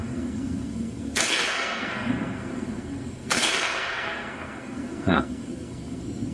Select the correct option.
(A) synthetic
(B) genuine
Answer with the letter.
A